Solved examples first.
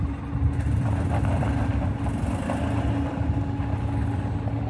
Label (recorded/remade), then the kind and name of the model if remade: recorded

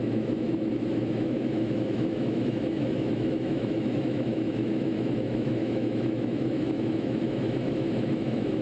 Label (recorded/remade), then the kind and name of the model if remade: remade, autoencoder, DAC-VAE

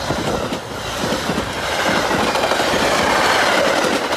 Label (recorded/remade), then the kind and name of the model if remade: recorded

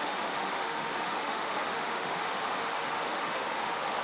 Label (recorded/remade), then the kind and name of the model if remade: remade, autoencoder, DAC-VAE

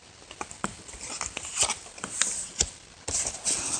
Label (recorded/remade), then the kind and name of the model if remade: recorded